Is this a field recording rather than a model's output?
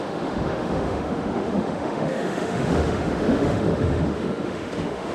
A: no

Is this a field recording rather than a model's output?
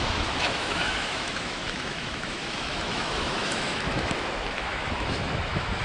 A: no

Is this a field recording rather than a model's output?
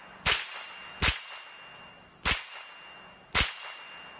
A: yes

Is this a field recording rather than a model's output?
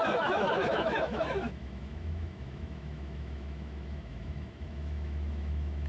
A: no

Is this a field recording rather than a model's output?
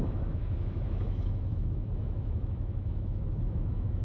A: no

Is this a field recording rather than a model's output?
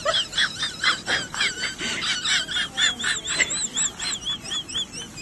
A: yes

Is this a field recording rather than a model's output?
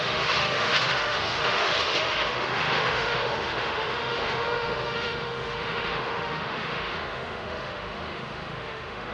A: no